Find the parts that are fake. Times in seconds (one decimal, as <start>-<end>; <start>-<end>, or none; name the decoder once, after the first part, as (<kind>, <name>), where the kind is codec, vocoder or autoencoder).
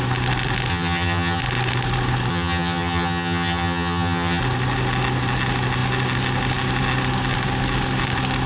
0.7-1.4 (vocoder, HiFi-GAN); 2.3-4.4